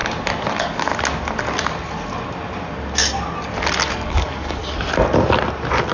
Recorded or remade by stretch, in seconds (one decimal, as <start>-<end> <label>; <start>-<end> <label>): 0.0-0.5 recorded; 0.5-0.9 remade; 0.9-3.9 recorded; 3.9-4.6 remade; 4.6-5.9 recorded